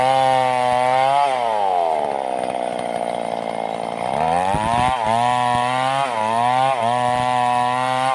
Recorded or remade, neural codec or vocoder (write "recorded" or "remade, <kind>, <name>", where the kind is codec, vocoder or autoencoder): recorded